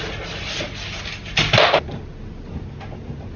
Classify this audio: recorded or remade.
recorded